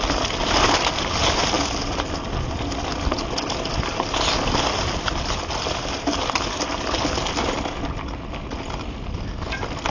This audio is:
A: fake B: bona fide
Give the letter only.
B